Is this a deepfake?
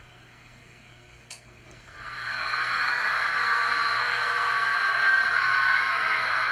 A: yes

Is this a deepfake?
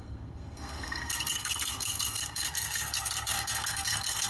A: yes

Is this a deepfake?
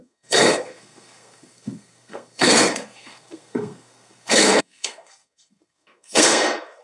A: yes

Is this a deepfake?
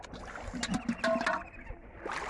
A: no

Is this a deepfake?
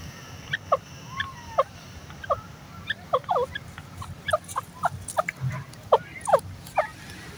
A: no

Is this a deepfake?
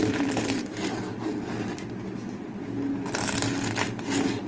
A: no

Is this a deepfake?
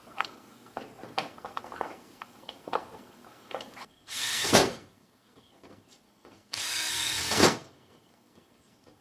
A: yes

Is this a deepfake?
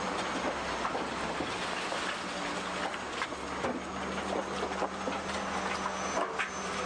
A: no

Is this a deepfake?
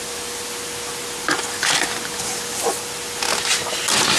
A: no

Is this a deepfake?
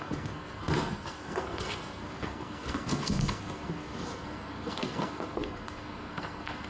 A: yes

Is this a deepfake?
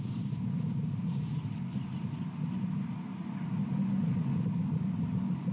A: no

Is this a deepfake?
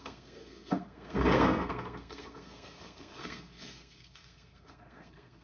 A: yes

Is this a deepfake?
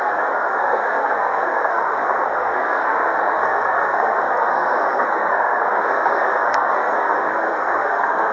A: yes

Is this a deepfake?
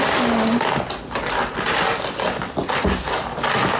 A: no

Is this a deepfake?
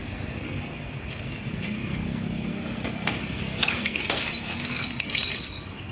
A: yes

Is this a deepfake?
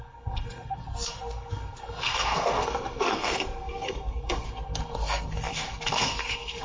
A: yes